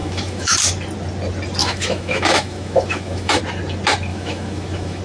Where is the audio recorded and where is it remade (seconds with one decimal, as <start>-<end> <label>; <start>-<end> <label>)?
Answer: 0.0-0.6 remade; 0.6-1.6 recorded; 1.6-3.4 remade; 3.4-4.1 recorded; 4.1-5.0 remade